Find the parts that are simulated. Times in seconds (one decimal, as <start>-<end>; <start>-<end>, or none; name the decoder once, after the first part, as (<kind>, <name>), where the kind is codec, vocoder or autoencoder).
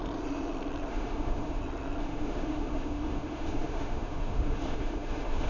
0.9-1.6 (autoencoder, DAC-VAE); 2.0-5.5